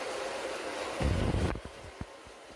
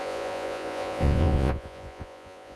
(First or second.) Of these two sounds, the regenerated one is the second